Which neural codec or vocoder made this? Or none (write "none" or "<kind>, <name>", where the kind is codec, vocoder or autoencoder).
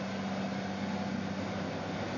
none